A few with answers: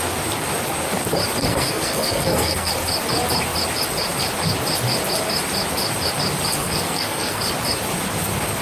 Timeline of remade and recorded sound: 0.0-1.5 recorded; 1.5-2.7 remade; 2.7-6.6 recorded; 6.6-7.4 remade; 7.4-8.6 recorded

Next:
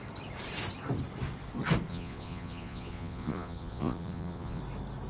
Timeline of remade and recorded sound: 0.0-1.9 recorded; 1.9-4.6 remade; 4.6-5.1 recorded

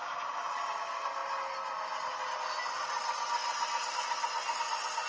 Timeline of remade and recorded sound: 0.0-5.1 recorded